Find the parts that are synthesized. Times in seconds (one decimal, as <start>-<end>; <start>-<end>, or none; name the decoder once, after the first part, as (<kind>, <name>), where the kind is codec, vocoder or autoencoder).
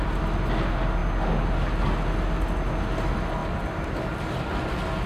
none